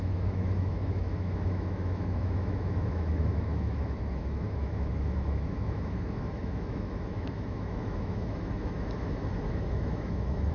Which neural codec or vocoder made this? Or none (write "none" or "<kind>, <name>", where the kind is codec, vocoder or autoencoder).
autoencoder, DAC-VAE